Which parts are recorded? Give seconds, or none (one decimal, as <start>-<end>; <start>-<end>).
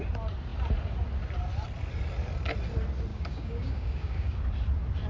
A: 0.0-3.1; 4.4-5.1